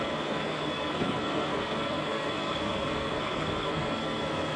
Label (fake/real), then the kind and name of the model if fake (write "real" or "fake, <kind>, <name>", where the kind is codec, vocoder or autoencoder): fake, codec, SNAC